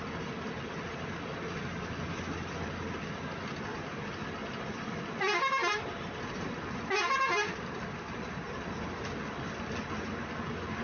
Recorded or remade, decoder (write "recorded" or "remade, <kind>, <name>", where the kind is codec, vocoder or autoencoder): recorded